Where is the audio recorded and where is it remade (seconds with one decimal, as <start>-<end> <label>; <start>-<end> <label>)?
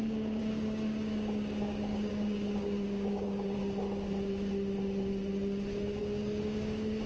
0.0-3.6 remade; 3.6-6.0 recorded; 6.0-7.1 remade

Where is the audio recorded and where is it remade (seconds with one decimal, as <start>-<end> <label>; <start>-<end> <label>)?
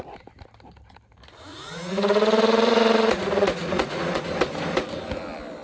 0.0-1.5 recorded; 1.5-4.2 remade; 4.2-5.6 recorded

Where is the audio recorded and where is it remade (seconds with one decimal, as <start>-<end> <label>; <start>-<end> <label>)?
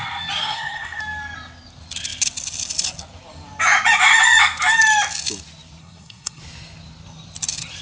0.0-0.4 recorded; 0.4-1.0 remade; 1.0-5.8 recorded; 5.8-6.4 remade; 6.4-7.8 recorded